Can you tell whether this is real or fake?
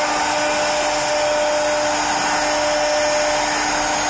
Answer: real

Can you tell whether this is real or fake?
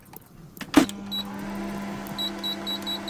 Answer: real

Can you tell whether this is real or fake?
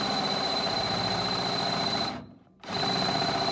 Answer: fake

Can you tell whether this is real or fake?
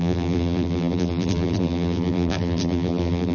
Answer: fake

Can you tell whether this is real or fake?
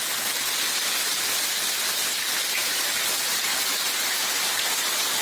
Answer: real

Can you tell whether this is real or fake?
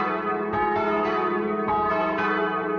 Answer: fake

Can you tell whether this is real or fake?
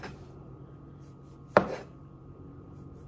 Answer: fake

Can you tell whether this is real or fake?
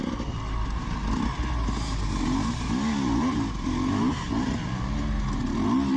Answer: real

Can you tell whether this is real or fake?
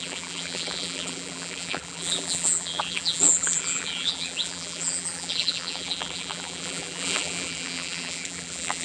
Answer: fake